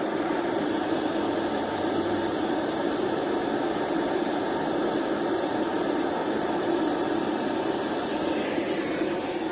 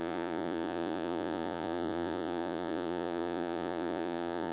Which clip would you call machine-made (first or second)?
second